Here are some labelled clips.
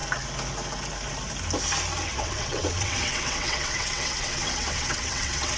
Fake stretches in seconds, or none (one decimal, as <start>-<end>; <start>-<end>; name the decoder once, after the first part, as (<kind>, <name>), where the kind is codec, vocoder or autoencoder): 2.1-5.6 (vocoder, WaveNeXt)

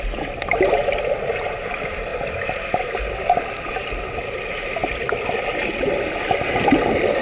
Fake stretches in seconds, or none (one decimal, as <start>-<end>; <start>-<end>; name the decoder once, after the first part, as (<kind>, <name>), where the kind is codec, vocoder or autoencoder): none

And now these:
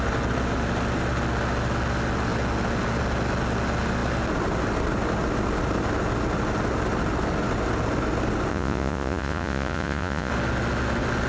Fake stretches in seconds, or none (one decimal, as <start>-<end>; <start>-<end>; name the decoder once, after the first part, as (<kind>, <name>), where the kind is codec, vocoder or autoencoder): 8.5-10.3 (vocoder, Vocos)

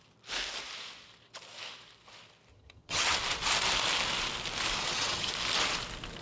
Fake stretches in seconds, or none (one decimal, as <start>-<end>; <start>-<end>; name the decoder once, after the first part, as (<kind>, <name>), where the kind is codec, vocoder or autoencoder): 2.5-3.2 (vocoder, HiFi-GAN); 4.8-5.3

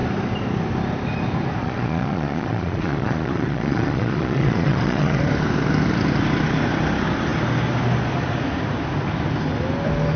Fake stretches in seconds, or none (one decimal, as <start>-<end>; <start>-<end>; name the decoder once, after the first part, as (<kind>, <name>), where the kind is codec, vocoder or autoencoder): 1.6-5.2 (vocoder, Vocos)

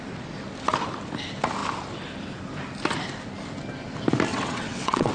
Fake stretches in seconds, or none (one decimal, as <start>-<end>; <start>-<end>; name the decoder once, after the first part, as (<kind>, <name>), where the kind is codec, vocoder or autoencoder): 4.3-5.1 (vocoder, WaveNeXt)

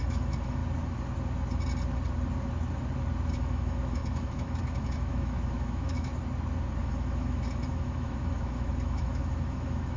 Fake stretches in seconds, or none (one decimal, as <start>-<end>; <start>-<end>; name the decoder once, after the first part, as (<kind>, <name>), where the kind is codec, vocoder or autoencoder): 0.0-0.6 (autoencoder, DAC-VAE); 3.3-6.1; 6.8-10.0